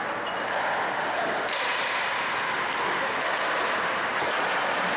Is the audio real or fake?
real